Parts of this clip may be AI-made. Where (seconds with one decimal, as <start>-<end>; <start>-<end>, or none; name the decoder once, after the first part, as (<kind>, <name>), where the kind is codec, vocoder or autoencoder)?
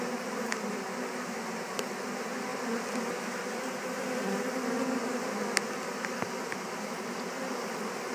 none